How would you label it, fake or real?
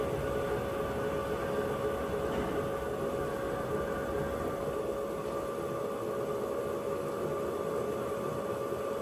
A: real